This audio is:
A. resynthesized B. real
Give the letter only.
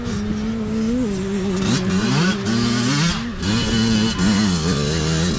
B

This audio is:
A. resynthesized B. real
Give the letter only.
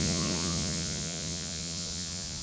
A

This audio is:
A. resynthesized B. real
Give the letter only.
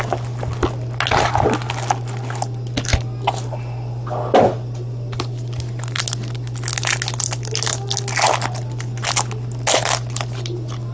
B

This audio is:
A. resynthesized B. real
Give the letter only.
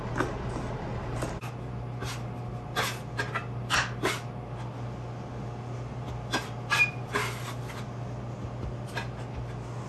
B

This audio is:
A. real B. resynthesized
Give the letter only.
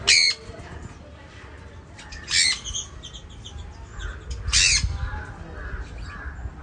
A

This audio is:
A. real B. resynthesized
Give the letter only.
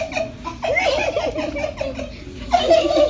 A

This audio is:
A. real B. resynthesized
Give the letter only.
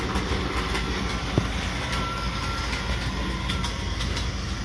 A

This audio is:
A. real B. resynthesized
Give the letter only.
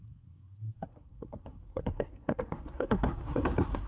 B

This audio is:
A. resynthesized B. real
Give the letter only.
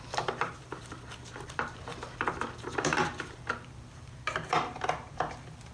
A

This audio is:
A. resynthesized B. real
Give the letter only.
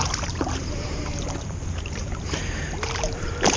A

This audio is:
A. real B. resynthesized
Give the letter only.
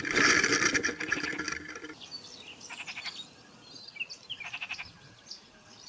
A